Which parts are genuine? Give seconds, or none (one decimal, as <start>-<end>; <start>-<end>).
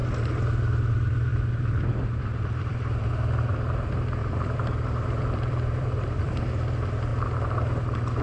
0.0-1.3; 3.1-4.2; 6.5-8.2